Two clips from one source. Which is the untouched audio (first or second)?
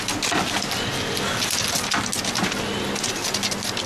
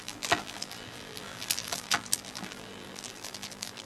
first